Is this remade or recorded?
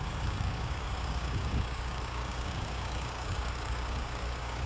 remade